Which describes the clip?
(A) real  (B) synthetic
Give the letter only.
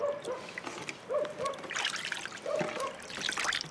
A